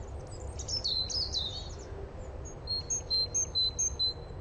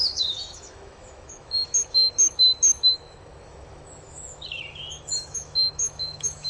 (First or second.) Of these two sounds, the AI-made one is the second